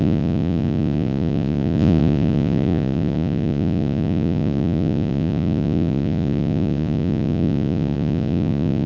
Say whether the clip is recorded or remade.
remade